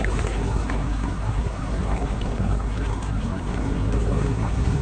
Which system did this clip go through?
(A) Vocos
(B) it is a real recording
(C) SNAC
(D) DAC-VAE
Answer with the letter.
C